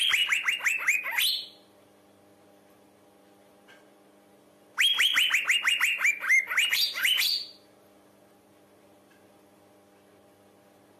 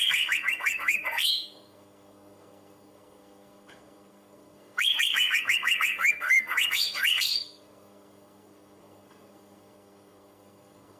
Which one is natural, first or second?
first